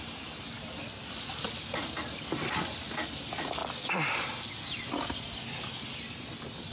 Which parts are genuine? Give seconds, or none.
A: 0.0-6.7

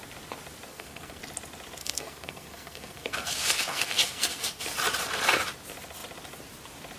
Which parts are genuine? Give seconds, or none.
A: 0.0-0.7; 1.2-1.8; 4.6-7.0

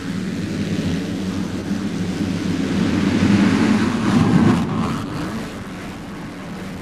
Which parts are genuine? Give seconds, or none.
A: 0.0-6.8

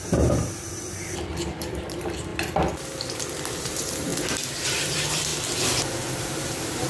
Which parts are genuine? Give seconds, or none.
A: 2.3-3.6; 4.1-4.7; 5.3-6.2